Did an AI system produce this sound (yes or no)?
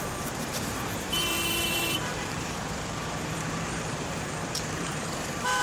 yes